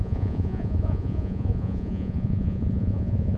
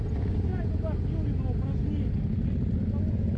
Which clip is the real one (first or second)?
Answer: second